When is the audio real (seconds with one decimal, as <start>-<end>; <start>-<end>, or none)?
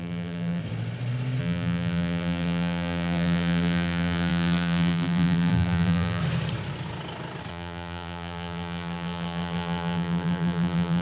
0.6-1.4; 6.2-7.5